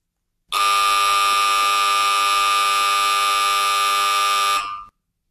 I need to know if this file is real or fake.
real